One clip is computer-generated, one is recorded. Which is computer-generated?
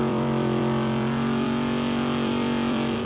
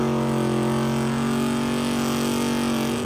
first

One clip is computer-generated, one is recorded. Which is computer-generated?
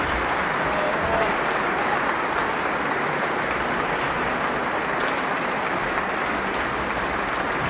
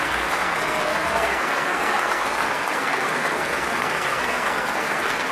second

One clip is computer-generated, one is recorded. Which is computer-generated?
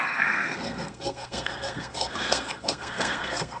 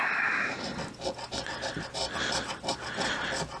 first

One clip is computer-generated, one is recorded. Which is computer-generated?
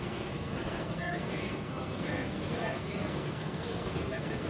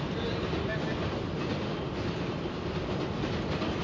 first